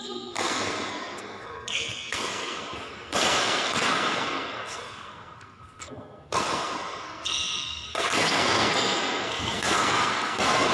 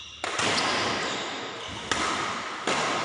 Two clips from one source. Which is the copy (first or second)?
first